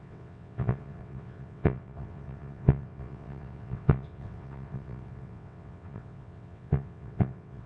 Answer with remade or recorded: remade